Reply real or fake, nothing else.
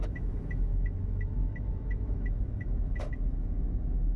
fake